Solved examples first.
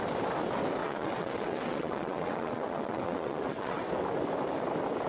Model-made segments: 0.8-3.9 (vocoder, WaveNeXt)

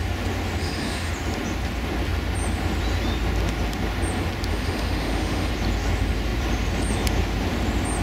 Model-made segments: 0.6-1.1 (autoencoder, DAC-VAE); 4.5-5.5